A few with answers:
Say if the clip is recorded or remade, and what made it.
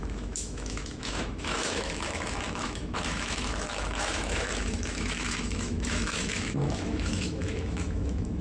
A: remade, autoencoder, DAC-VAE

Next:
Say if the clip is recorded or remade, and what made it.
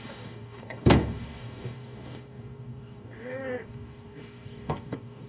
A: remade, codec, DAC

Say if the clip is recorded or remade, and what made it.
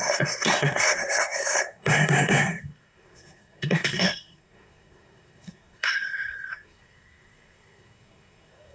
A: remade, codec, SNAC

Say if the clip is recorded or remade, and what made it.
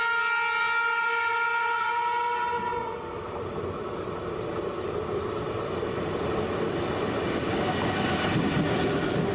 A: recorded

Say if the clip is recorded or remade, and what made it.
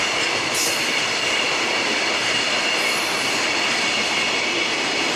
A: remade, vocoder, BigVGAN v2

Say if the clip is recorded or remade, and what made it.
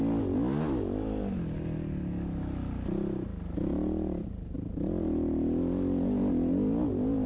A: recorded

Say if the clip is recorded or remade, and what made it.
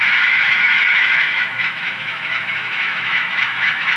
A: remade, autoencoder, DAC-VAE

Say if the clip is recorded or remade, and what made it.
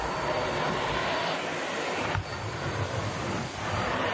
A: remade, vocoder, BigVGAN v2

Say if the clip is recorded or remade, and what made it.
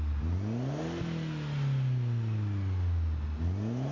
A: recorded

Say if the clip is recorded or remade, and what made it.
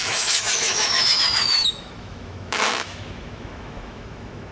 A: remade, autoencoder, DAC-VAE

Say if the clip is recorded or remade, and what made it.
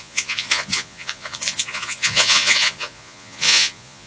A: remade, vocoder, Vocos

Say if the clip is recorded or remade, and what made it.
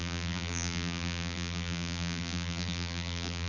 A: remade, vocoder, BigVGAN v2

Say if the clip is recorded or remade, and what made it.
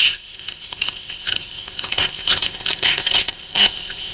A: remade, codec, ZipCodec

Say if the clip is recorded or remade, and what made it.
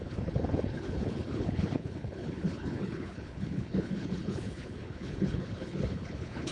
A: remade, codec, HILCodec